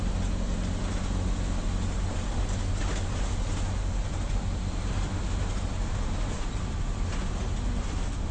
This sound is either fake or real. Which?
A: real